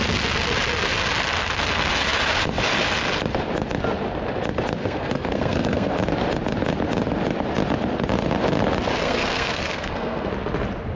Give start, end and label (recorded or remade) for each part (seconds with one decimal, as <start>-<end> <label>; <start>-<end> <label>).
0.0-4.8 recorded; 4.8-5.9 remade; 5.9-9.0 recorded; 9.0-10.3 remade; 10.3-11.0 recorded